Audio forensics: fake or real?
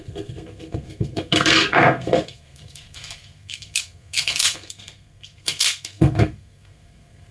fake